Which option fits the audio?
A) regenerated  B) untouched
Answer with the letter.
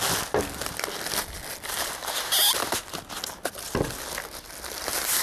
B